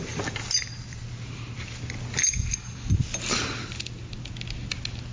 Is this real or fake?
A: real